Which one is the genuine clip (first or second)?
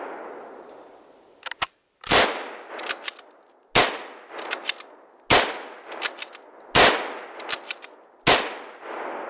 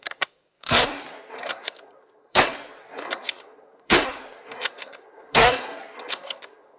first